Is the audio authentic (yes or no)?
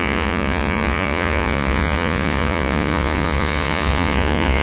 no